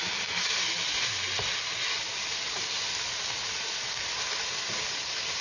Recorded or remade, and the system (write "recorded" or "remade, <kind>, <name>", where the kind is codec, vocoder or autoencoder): recorded